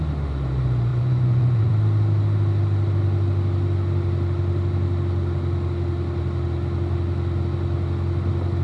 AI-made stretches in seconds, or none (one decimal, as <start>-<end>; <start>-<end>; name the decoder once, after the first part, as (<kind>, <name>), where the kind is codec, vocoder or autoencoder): 0.9-1.7 (vocoder, Vocos)